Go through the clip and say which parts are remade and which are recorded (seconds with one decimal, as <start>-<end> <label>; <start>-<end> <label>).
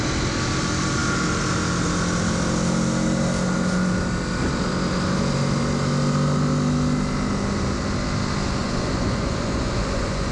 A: 0.0-8.6 recorded; 8.6-10.3 remade